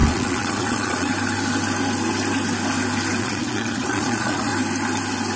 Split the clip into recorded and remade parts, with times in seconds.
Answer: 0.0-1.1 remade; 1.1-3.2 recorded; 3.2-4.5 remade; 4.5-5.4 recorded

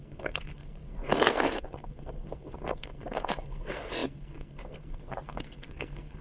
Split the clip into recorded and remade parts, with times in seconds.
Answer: 0.0-6.2 remade

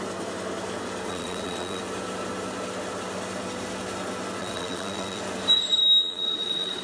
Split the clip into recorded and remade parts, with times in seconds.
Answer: 0.0-1.1 recorded; 1.1-1.8 remade; 1.8-4.4 recorded; 4.4-5.2 remade; 5.2-6.0 recorded; 6.0-6.8 remade